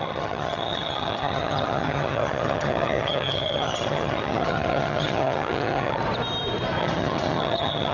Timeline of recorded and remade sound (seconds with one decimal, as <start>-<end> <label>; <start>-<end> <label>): 0.0-6.0 remade; 6.0-6.8 recorded; 6.8-7.9 remade

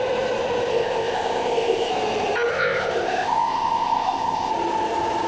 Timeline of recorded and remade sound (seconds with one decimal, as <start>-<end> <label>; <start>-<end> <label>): 0.0-0.7 recorded; 0.7-1.9 remade; 1.9-2.5 recorded; 2.5-4.5 remade; 4.5-5.3 recorded

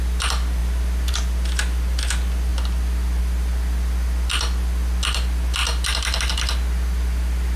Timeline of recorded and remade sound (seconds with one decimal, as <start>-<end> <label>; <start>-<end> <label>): 0.0-7.6 recorded

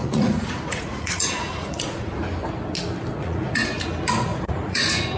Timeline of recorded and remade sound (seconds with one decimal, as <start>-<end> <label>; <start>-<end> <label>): 0.0-2.2 remade; 2.2-3.1 recorded; 3.1-3.8 remade; 3.8-4.3 recorded; 4.3-5.2 remade

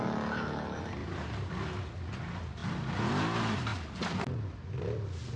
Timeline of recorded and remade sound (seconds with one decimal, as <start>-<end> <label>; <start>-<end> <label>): 0.0-1.0 recorded; 1.0-1.5 remade; 1.5-5.4 recorded

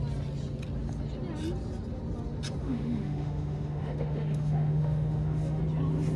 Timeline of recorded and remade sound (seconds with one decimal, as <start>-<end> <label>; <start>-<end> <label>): 0.0-2.6 recorded; 2.6-5.6 remade; 5.6-6.2 recorded